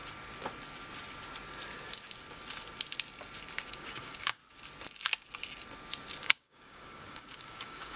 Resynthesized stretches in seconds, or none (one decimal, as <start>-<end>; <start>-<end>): 3.7-4.4; 6.2-8.0